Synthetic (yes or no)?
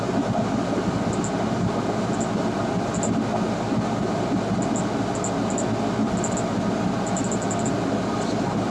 no